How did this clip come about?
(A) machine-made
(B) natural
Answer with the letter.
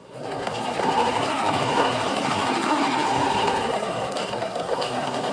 A